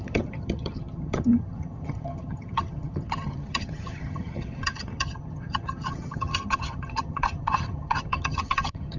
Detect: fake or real fake